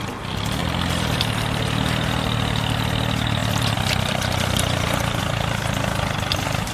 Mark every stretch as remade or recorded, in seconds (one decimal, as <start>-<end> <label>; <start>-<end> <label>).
0.0-0.6 recorded; 0.6-1.2 remade; 1.2-3.4 recorded; 3.4-5.2 remade; 5.2-6.7 recorded